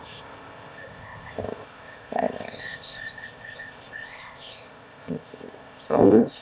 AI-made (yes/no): yes